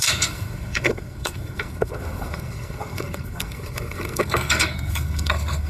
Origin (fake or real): fake